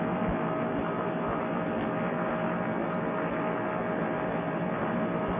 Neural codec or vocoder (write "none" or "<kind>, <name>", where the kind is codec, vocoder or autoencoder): none